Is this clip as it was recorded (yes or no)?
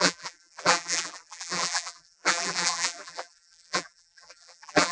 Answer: no